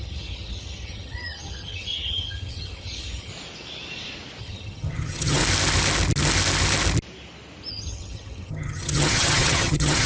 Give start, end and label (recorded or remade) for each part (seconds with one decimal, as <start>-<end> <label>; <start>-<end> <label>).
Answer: 0.0-3.3 remade; 3.3-4.4 recorded; 4.4-5.4 remade; 5.4-7.7 recorded; 7.7-10.1 remade